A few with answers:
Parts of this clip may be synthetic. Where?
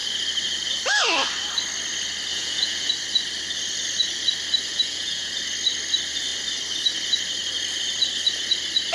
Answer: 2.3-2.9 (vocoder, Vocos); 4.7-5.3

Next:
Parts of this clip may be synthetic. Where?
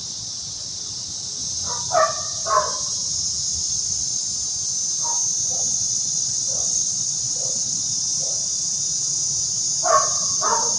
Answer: 3.5-4.3 (vocoder, Vocos); 5.7-7.8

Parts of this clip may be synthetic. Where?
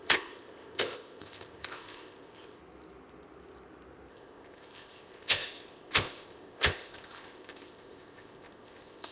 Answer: 0.0-2.6 (codec, ZipCodec); 4.1-9.1